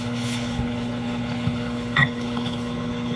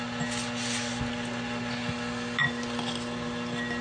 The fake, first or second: first